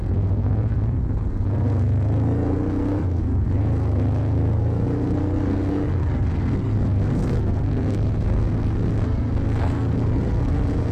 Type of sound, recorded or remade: remade